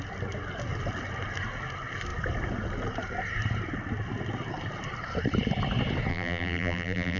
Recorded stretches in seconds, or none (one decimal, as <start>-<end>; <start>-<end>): 0.0-6.1